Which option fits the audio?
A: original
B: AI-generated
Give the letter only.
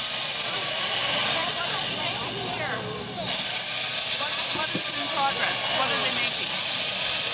A